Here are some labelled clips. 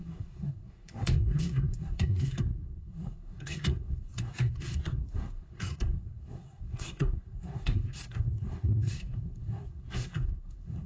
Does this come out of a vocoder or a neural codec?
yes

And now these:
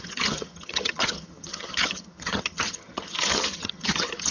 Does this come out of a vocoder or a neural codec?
yes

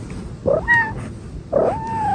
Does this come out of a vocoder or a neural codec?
no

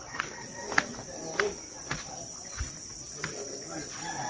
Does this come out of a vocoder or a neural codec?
no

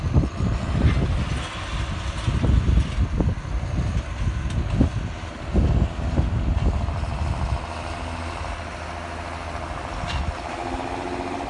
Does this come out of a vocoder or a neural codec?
no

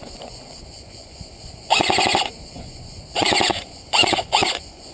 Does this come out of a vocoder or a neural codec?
yes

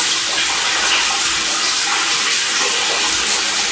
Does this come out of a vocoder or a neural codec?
no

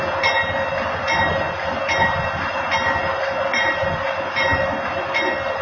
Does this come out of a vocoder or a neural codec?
no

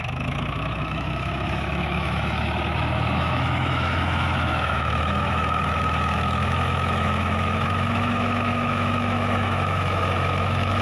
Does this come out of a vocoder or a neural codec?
yes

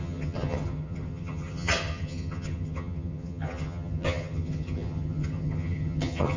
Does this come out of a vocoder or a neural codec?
yes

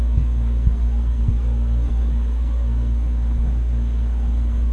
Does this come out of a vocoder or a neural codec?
yes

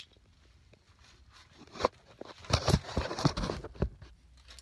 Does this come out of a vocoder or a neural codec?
no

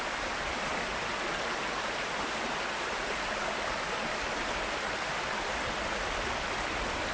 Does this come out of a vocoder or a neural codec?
no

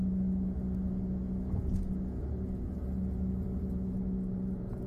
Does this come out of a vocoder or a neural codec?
yes